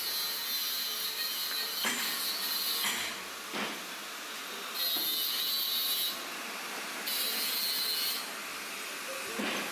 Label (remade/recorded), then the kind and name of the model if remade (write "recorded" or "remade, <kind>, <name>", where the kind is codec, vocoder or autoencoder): recorded